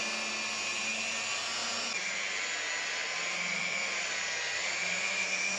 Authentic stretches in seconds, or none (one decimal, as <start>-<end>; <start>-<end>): 0.0-3.0